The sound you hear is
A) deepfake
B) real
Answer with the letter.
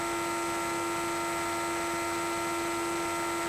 B